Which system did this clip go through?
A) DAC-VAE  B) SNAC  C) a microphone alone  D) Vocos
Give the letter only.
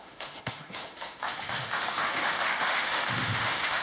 A